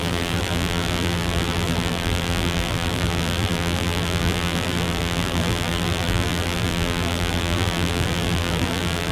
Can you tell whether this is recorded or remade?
remade